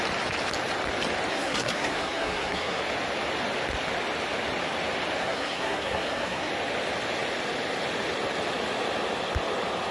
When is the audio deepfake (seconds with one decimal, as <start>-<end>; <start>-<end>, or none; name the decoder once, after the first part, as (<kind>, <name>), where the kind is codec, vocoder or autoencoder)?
1.3-2.8 (codec, SNAC); 5.2-6.5